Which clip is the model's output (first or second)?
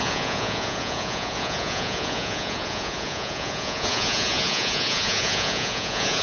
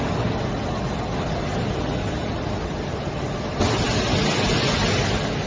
first